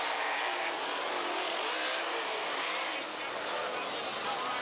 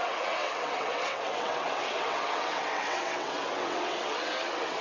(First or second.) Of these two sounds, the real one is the first